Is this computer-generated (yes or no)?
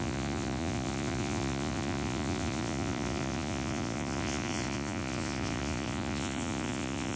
yes